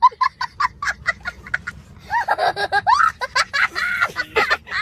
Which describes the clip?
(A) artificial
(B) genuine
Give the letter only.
B